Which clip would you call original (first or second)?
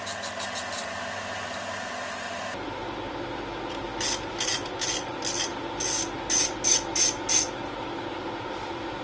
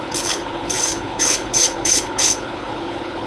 first